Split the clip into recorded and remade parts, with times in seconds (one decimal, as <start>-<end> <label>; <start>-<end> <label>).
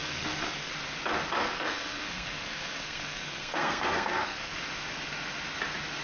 0.0-0.7 remade; 0.7-1.4 recorded; 1.4-4.5 remade; 4.5-6.0 recorded